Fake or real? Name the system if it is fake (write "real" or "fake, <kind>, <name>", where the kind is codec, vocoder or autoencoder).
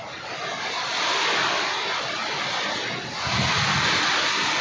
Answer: real